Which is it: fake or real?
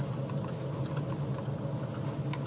real